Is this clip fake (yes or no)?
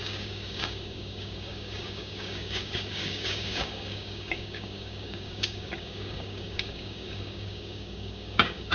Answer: yes